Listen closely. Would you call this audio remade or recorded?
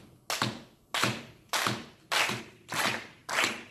recorded